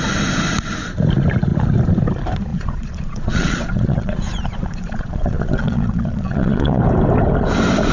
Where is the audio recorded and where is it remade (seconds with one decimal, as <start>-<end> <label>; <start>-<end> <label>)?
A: 0.0-2.5 recorded; 2.5-6.8 remade; 6.8-7.9 recorded